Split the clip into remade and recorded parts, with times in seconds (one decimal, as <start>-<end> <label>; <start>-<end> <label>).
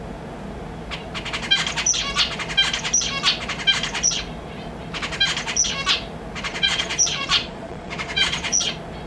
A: 0.0-6.5 recorded; 6.5-8.7 remade; 8.7-9.1 recorded